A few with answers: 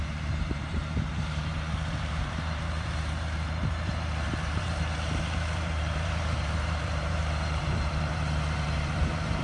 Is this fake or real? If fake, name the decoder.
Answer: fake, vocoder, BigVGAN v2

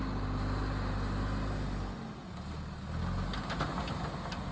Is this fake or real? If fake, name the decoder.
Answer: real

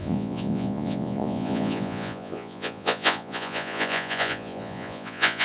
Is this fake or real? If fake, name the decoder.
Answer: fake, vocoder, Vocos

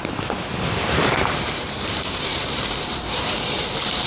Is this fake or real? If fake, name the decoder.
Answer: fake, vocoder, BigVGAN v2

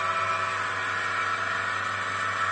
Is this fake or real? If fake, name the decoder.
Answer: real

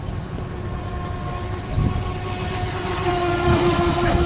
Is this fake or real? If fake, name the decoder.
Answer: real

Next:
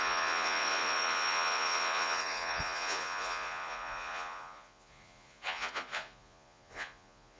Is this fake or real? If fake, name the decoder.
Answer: fake, vocoder, Vocos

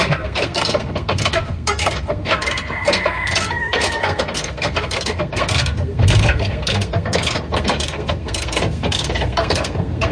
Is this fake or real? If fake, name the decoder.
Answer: fake, codec, SNAC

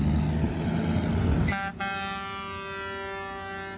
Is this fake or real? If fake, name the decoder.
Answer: real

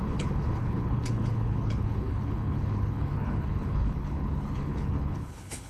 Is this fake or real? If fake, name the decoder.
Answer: fake, codec, HILCodec